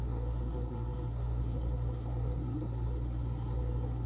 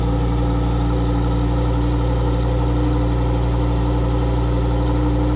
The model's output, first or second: first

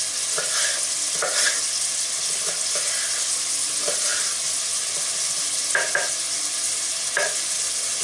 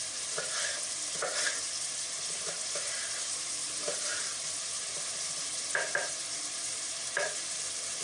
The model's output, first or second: second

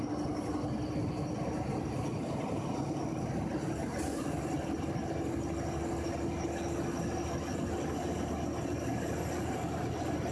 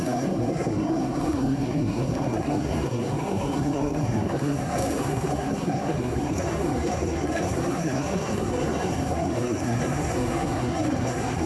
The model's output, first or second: second